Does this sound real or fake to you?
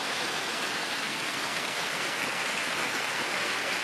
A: fake